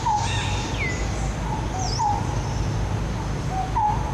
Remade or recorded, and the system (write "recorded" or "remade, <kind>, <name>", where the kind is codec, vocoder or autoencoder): recorded